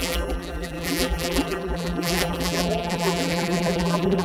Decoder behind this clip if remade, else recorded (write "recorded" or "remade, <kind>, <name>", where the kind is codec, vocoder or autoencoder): remade, vocoder, BigVGAN v2